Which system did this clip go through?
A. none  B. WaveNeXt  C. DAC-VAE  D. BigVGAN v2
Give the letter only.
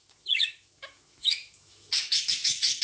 C